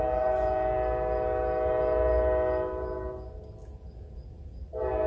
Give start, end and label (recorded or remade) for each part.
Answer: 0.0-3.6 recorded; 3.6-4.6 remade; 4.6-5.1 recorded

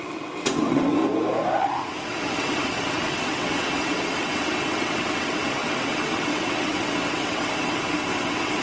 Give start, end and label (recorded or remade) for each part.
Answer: 0.0-1.0 remade; 1.0-1.6 recorded; 1.6-8.6 remade

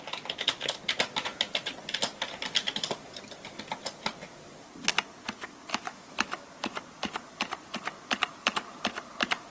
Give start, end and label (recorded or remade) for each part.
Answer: 0.0-5.7 recorded; 5.7-6.4 remade; 6.4-9.5 recorded